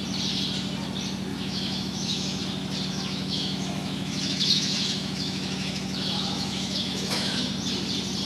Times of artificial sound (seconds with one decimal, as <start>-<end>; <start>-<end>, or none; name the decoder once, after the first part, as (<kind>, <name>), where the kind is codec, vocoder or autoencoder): 1.3-2.4 (autoencoder, DAC-VAE); 2.9-7.5

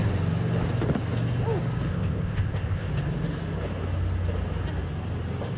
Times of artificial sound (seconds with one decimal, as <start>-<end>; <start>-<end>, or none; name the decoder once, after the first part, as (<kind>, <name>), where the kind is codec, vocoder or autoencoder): 1.9-2.9 (codec, ZipCodec)

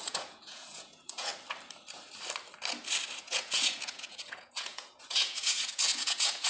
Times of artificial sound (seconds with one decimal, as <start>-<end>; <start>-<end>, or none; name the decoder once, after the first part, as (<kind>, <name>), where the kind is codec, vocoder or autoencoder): 0.0-1.3 (vocoder, Vocos); 3.2-6.5

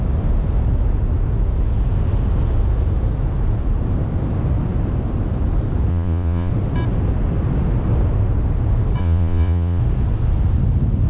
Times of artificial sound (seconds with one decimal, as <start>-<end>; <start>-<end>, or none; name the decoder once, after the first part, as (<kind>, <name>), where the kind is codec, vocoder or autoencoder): 5.9-6.5 (vocoder, Vocos); 9.0-9.8

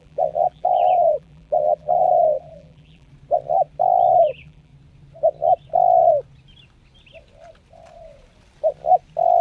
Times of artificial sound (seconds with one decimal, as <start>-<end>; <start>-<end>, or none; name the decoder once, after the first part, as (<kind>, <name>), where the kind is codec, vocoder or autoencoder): 0.0-3.1 (vocoder, BigVGAN v2); 4.2-4.7